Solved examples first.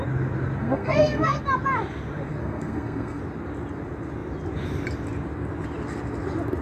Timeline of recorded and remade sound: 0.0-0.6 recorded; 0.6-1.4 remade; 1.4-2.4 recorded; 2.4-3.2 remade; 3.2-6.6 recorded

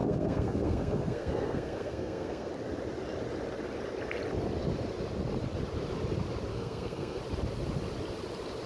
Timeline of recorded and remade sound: 0.0-2.5 remade; 2.5-6.5 recorded; 6.5-7.2 remade; 7.2-8.7 recorded

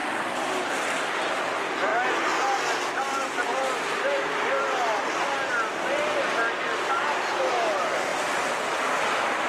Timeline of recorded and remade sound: 0.0-9.5 recorded

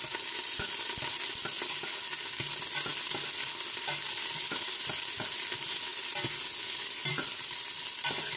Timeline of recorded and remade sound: 0.0-8.4 recorded